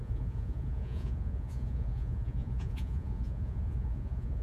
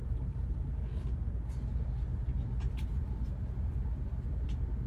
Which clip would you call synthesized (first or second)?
first